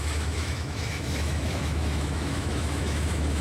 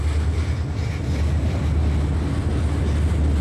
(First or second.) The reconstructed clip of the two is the first